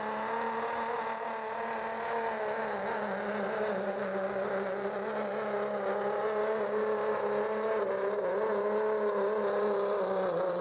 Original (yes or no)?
yes